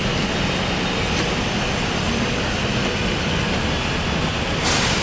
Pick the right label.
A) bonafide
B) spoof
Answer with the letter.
A